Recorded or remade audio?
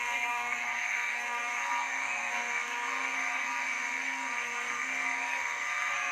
remade